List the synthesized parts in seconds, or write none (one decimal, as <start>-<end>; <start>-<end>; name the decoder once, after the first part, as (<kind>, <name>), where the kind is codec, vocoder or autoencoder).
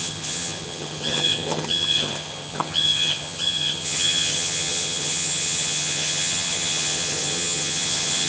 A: 0.0-8.3 (vocoder, HiFi-GAN)